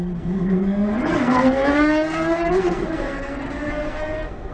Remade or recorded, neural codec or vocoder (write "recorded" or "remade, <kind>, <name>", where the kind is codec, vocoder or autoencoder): remade, codec, SNAC